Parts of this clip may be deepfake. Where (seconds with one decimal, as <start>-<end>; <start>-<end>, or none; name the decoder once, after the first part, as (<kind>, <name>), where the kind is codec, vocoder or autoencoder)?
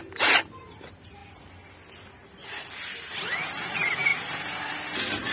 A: none